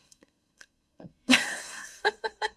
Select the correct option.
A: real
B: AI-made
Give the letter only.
B